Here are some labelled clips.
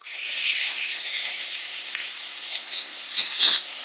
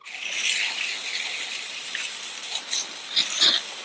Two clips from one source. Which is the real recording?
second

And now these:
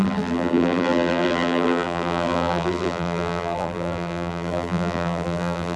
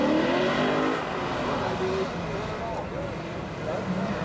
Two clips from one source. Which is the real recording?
second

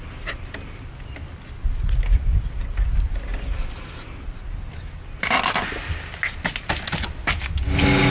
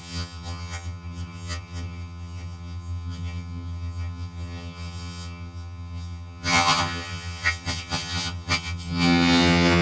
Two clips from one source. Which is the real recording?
first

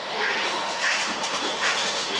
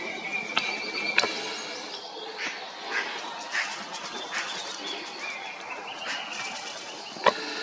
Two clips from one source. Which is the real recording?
second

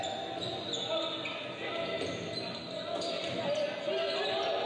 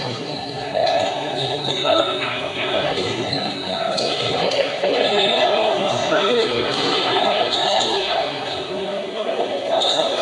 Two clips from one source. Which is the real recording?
first